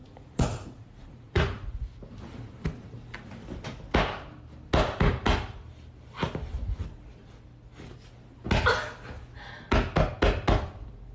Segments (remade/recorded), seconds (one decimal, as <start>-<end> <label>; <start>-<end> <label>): 0.0-1.8 remade; 1.8-11.1 recorded